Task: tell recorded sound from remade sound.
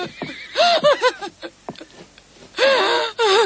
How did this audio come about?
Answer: recorded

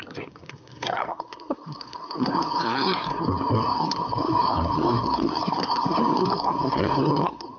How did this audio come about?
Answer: remade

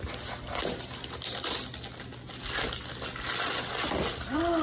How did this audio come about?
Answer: recorded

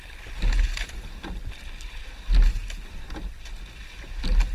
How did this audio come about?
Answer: recorded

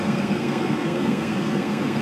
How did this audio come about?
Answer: remade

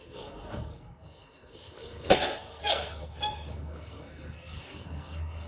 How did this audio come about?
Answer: remade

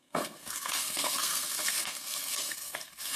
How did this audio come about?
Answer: remade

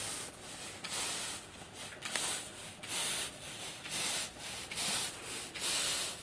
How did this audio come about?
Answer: recorded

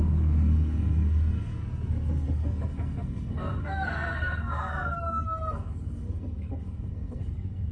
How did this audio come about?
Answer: remade